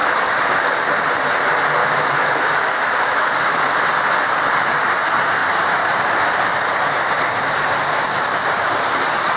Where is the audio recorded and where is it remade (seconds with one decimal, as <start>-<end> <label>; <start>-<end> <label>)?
0.0-0.7 remade; 0.7-1.8 recorded; 1.8-3.6 remade; 3.6-9.4 recorded